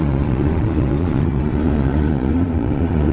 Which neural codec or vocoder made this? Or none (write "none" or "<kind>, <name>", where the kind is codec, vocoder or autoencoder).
vocoder, Vocos